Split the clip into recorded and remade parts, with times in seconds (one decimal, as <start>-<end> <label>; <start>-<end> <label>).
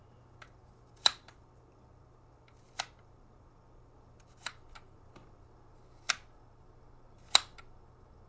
0.0-0.6 recorded; 0.6-4.9 remade; 4.9-8.3 recorded